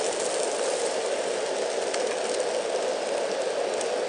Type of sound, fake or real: real